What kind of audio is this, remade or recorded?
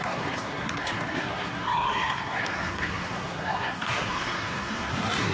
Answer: remade